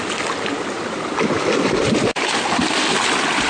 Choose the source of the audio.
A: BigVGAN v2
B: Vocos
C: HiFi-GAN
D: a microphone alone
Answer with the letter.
D